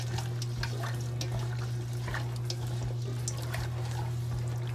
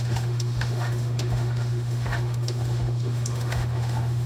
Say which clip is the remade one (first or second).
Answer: second